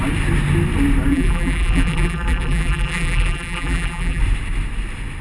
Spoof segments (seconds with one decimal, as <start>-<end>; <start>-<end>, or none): 1.1-4.2

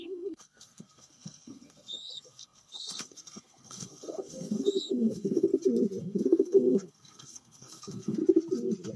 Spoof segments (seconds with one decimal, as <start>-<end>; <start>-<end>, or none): 0.0-5.5; 6.0-8.2

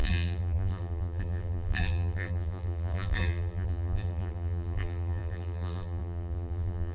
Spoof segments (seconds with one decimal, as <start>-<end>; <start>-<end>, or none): 0.0-6.9

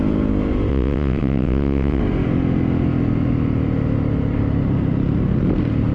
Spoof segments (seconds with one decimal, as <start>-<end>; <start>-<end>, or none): 0.7-2.0

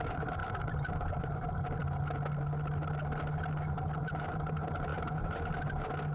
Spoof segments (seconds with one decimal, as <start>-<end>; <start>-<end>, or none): 0.0-1.8; 3.7-6.1

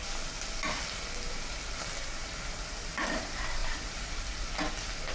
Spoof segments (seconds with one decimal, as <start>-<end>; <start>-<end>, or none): 2.2-3.2; 3.6-4.2